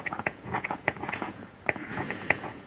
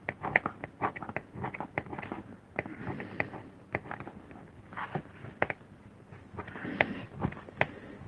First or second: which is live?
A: second